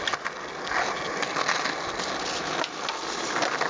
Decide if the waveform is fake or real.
real